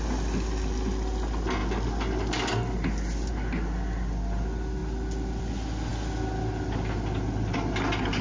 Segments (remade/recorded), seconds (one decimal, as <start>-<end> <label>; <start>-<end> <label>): 0.0-8.2 recorded